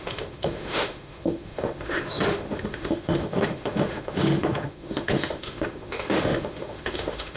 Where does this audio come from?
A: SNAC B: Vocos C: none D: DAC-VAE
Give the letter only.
D